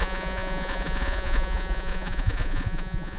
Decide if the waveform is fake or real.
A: fake